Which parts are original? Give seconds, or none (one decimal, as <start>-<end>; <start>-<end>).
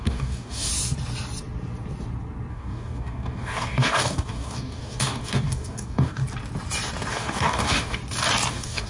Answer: 0.7-2.5; 6.2-7.1; 8.0-8.5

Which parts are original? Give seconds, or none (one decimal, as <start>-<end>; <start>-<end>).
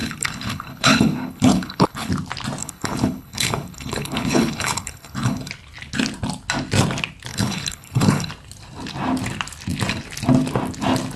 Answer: 2.1-2.6; 5.5-7.3; 8.3-11.2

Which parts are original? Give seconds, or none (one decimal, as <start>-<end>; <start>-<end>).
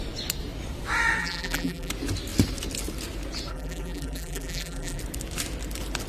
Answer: 0.0-1.2; 1.9-3.5; 5.0-6.1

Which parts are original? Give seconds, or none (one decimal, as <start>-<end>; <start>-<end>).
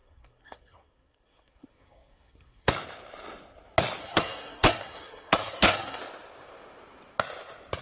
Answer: 2.7-4.0; 6.0-7.8